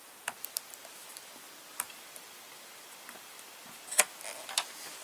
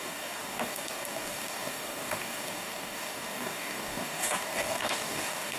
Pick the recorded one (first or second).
first